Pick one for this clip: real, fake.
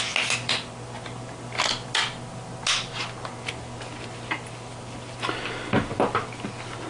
real